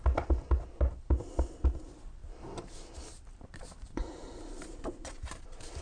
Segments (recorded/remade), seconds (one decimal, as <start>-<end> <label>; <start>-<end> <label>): 0.0-2.2 recorded; 2.2-5.8 remade